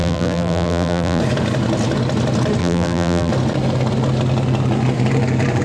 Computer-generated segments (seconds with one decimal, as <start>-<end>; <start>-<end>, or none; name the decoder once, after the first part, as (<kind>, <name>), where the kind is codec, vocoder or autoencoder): 0.0-1.2 (vocoder, BigVGAN v2); 2.6-3.3